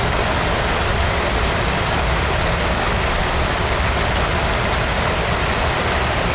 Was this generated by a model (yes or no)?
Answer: no